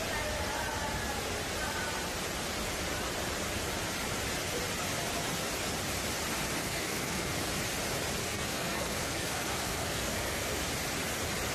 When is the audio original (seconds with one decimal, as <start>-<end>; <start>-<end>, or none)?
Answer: 0.0-6.6; 7.5-8.2; 10.6-11.5